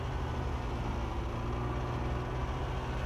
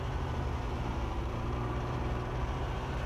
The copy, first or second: second